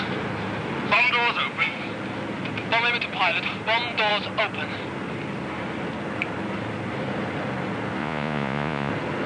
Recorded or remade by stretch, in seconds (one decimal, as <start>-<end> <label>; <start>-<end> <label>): 0.0-8.0 recorded; 8.0-8.9 remade; 8.9-9.3 recorded